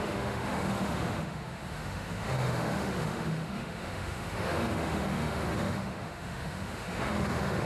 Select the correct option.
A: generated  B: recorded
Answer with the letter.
A